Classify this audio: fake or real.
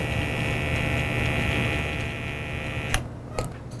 real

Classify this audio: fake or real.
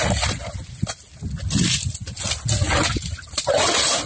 real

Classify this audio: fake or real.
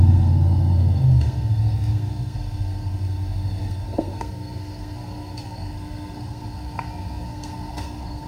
fake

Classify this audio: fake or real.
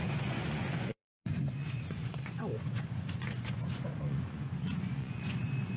fake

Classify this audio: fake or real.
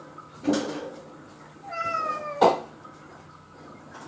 real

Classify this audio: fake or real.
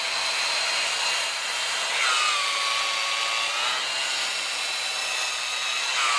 real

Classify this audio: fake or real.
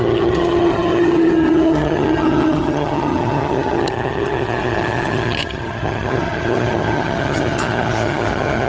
fake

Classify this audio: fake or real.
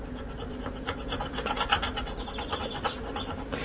real